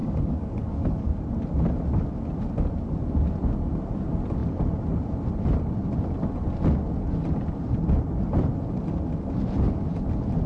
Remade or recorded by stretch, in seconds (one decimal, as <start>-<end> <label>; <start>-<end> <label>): 0.0-1.2 remade; 1.2-10.5 recorded

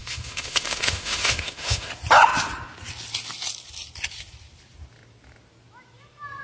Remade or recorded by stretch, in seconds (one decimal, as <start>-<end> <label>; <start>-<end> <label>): 0.0-1.9 remade; 1.9-6.4 recorded

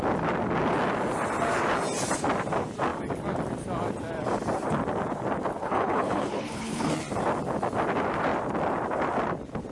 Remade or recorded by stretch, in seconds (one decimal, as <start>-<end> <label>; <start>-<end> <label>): 0.0-5.6 recorded; 5.6-6.9 remade; 6.9-9.7 recorded

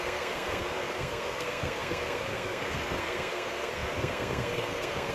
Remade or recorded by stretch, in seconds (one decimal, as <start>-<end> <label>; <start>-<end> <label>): 0.0-5.1 remade

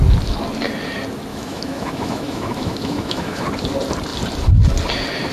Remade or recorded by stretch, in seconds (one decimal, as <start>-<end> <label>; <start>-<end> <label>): 0.0-1.3 recorded; 1.3-3.4 remade; 3.4-5.3 recorded

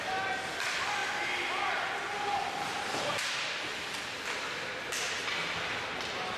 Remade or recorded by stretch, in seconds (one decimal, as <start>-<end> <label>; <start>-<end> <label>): 0.0-6.4 recorded